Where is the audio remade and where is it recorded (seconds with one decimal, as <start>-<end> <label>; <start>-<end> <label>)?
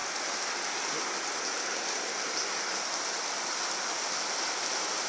0.0-5.1 recorded